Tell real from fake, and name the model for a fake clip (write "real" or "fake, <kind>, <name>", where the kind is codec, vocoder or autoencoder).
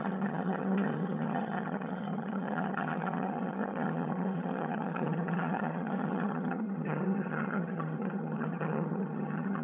fake, vocoder, HiFi-GAN